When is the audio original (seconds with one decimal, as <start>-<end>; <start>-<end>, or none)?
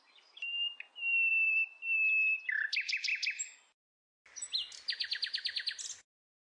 0.0-6.6